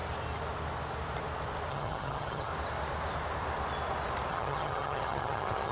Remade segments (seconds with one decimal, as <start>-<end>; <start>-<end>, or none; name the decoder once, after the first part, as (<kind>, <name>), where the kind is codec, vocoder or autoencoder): 1.7-2.5 (vocoder, HiFi-GAN); 4.3-5.7